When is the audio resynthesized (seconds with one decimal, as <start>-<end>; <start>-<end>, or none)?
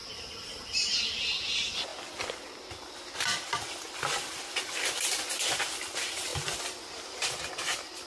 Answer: none